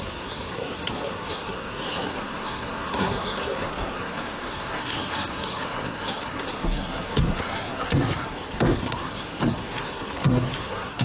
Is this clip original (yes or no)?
no